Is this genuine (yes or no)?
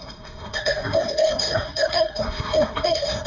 no